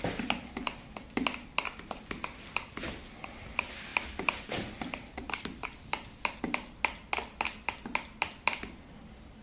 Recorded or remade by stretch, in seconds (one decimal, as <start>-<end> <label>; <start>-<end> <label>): 0.0-9.4 recorded